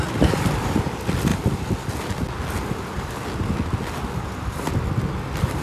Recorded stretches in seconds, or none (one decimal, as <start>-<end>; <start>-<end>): 0.0-5.6